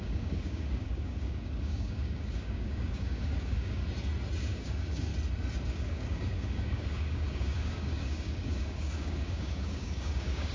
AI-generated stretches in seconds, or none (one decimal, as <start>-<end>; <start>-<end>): 0.0-3.8; 4.4-5.1; 5.7-10.5